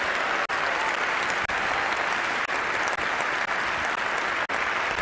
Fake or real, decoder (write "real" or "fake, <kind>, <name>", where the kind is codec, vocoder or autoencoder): real